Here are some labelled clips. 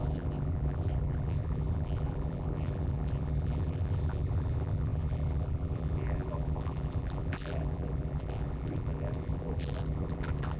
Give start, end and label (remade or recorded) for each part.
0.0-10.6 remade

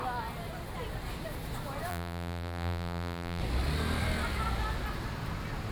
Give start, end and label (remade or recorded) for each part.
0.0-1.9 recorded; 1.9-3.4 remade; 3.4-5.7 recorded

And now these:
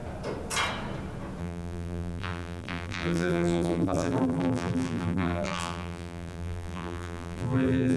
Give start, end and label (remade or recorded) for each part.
0.0-1.4 recorded; 1.4-8.0 remade

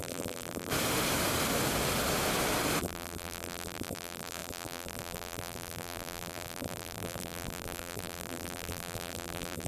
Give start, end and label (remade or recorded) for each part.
0.0-0.7 remade; 0.7-2.8 recorded; 2.8-9.7 remade

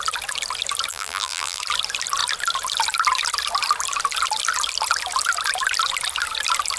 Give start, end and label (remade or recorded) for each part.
0.0-0.9 recorded; 0.9-1.6 remade; 1.6-6.8 recorded

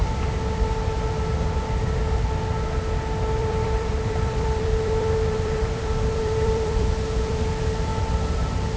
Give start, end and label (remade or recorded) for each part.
0.0-3.4 recorded; 3.4-7.5 remade; 7.5-8.8 recorded

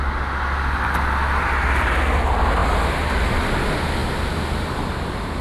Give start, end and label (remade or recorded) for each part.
0.0-5.4 recorded